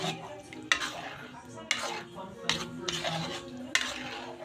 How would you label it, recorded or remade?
recorded